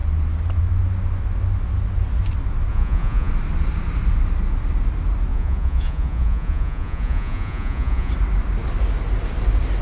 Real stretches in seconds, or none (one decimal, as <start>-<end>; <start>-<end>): 0.0-2.7; 3.3-5.3; 8.1-9.8